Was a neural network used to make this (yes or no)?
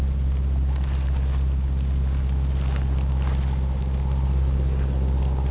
no